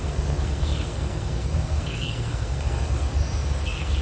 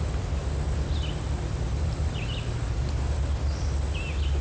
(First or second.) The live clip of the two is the second